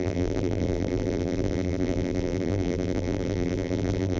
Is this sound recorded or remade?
remade